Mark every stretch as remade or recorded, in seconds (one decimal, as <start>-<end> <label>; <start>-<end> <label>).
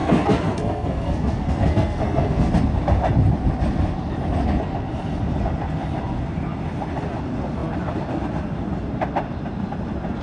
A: 0.0-2.5 remade; 2.5-10.2 recorded